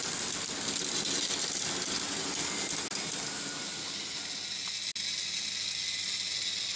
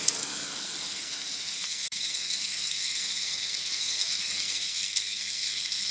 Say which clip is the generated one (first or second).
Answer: second